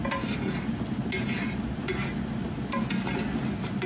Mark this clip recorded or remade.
recorded